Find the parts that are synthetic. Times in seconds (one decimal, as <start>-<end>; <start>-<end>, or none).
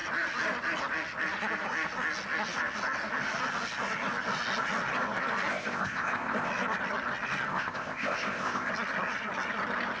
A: 5.5-6.5; 7.5-8.7